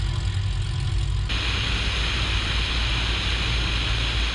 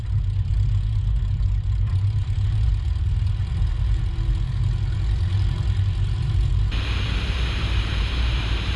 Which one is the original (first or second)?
first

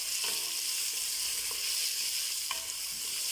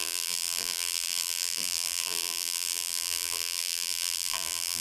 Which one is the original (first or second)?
first